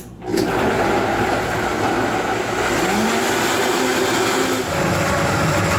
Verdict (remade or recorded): recorded